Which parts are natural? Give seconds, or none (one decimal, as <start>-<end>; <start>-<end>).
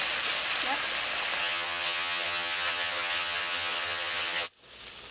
0.0-1.4; 4.5-5.1